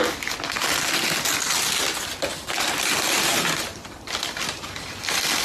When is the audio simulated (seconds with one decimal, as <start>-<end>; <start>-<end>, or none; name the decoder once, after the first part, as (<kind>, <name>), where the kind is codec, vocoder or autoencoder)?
3.7-5.0 (vocoder, BigVGAN v2)

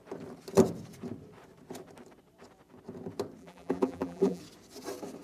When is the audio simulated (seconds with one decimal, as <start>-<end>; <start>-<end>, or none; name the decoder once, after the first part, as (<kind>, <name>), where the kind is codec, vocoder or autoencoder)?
3.4-4.4 (vocoder, BigVGAN v2)